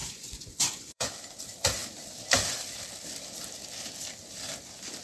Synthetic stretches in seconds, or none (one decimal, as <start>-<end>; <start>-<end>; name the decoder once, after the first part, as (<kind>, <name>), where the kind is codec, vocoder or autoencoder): 0.0-1.1 (vocoder, Vocos)

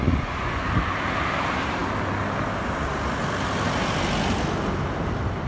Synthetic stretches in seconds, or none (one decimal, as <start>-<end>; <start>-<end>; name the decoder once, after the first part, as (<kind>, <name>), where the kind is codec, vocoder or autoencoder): 0.0-0.7 (vocoder, Vocos)

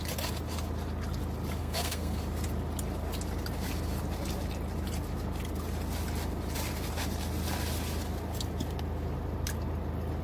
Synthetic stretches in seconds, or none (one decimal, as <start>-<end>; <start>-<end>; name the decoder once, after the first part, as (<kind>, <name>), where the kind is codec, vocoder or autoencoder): 1.6-2.2 (codec, SNAC)

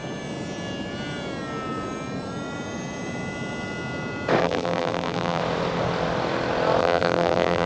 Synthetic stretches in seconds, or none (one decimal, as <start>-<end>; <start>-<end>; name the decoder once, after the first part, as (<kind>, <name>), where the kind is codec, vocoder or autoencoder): 4.4-5.4 (vocoder, BigVGAN v2); 6.8-7.7

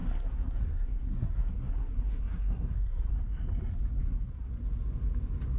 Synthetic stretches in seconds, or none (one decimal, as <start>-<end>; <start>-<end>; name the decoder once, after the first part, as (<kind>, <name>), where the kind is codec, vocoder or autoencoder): 0.0-3.1 (codec, SNAC); 4.0-4.5

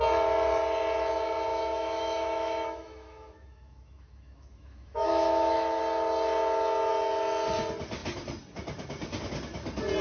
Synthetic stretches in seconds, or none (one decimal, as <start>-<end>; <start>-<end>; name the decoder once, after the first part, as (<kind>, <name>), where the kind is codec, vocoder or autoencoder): 1.5-5.8 (autoencoder, DAC-VAE)

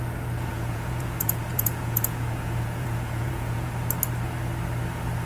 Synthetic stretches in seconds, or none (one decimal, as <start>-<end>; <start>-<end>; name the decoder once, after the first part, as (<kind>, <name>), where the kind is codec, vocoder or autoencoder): 0.5-3.7 (vocoder, Vocos)